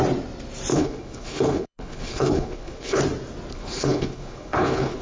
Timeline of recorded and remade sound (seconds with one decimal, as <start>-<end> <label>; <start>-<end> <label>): 0.0-0.7 recorded; 0.7-3.0 remade; 3.0-3.5 recorded; 3.5-5.0 remade